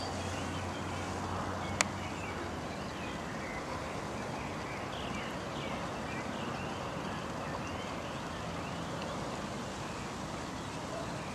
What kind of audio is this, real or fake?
real